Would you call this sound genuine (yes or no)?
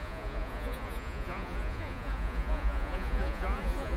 no